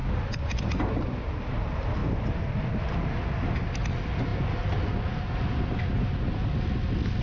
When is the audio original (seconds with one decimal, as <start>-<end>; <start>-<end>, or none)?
0.0-7.2